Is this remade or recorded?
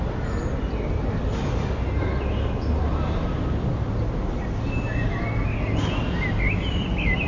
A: recorded